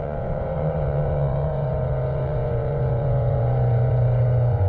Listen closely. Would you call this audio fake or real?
fake